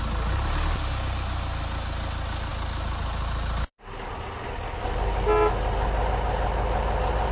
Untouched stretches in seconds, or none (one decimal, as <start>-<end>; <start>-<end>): 0.0-7.3